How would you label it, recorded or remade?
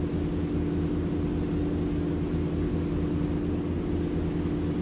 recorded